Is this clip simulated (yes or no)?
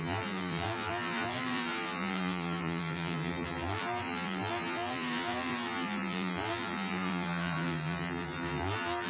yes